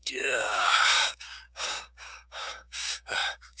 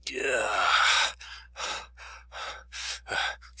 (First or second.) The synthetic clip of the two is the first